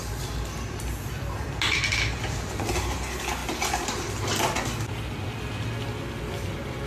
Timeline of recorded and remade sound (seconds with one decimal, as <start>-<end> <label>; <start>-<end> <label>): 0.0-6.9 recorded